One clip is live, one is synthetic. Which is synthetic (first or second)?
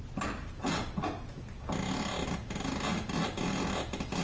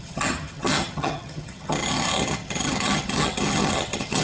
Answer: second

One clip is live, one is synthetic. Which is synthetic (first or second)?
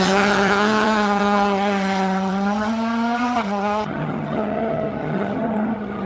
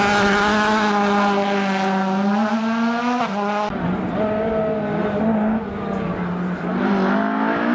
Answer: first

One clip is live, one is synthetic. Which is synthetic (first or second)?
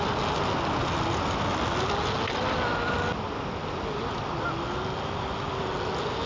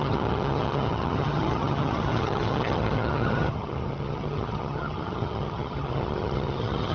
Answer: second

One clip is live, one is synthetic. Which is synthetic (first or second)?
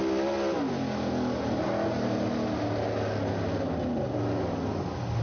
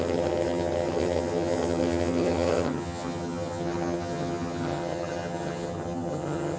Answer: second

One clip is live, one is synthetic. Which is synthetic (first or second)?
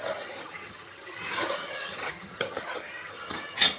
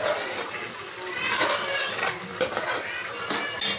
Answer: first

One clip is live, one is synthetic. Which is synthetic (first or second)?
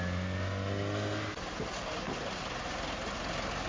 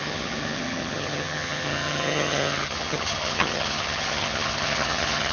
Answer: second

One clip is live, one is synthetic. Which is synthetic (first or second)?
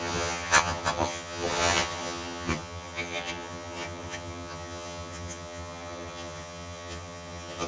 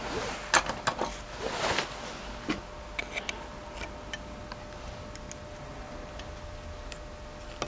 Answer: first